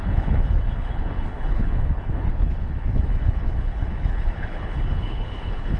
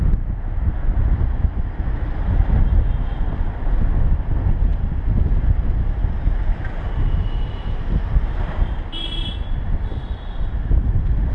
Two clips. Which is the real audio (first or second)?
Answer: second